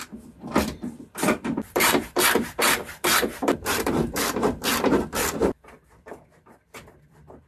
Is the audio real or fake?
fake